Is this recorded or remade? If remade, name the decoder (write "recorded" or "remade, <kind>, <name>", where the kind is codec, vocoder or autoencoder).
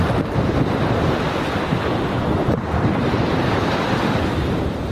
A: remade, vocoder, BigVGAN v2